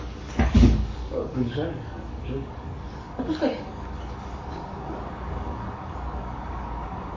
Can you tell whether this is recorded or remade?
remade